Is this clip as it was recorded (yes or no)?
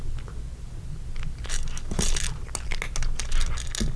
yes